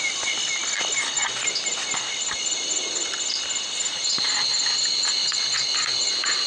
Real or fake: real